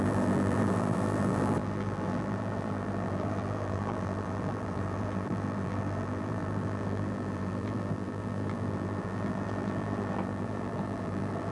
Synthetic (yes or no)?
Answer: yes